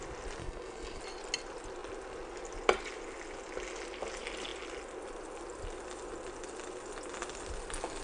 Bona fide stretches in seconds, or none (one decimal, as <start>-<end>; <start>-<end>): 0.0-0.4; 1.0-8.0

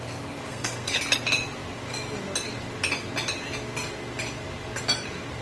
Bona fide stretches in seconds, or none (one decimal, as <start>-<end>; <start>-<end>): 0.0-0.5; 1.0-5.4

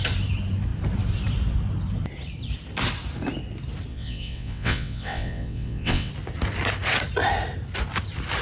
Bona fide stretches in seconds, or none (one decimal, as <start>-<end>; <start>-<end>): 0.0-3.9; 6.1-8.4

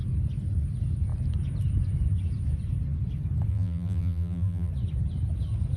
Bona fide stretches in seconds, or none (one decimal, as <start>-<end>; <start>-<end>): 0.0-3.5; 4.7-5.8

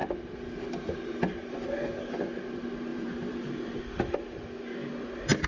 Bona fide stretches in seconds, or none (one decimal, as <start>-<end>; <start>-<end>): 1.3-2.9; 3.7-5.5

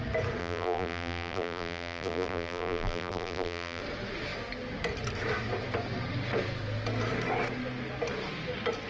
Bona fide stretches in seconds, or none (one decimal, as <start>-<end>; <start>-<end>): 0.0-0.4; 3.8-8.9

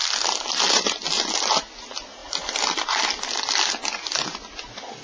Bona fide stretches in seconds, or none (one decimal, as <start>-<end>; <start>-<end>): 0.0-5.0